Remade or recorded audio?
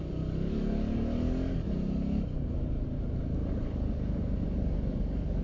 remade